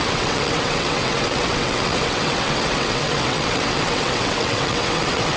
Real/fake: fake